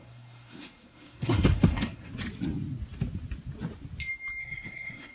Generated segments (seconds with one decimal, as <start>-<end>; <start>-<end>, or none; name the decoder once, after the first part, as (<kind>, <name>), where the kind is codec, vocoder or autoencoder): 0.0-2.1 (codec, SNAC); 4.4-5.1